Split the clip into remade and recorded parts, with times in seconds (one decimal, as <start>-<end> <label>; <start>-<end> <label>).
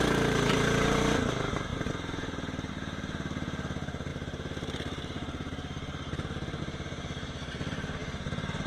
0.0-8.7 remade